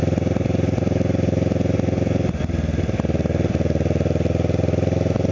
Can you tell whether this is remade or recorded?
recorded